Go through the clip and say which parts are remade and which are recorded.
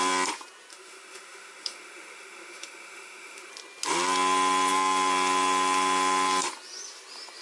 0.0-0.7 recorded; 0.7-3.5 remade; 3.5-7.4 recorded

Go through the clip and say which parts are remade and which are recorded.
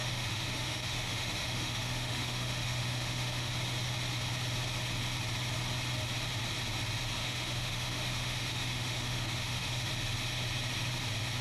0.0-3.5 remade; 3.5-7.2 recorded; 7.2-9.9 remade; 9.9-11.4 recorded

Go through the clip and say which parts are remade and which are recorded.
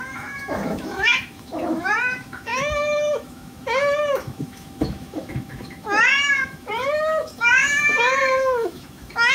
0.0-9.3 remade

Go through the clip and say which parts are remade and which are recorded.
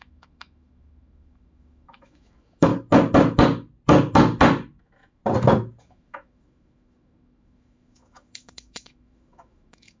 0.0-2.7 remade; 2.7-4.8 recorded; 4.8-5.2 remade; 5.2-5.8 recorded; 5.8-10.0 remade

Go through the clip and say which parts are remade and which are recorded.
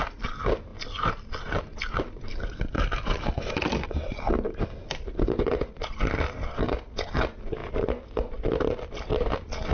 0.0-9.7 recorded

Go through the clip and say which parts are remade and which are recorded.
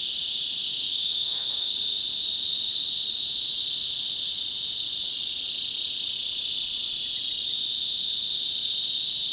0.0-0.6 recorded; 0.6-1.7 remade; 1.7-9.3 recorded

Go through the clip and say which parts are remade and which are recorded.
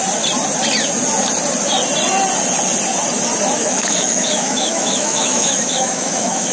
0.0-3.6 recorded; 3.6-6.5 remade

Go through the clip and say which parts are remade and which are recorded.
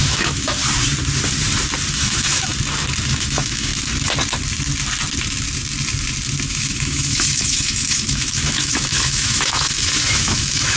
0.0-0.6 remade; 0.6-1.9 recorded; 1.9-2.5 remade; 2.5-3.1 recorded; 3.1-3.7 remade; 3.7-6.5 recorded; 6.5-10.8 remade